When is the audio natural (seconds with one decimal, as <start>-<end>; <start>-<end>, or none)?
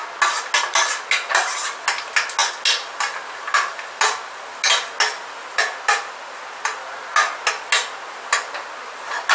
0.0-9.3